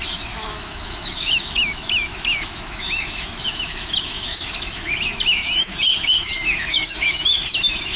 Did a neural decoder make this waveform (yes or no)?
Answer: yes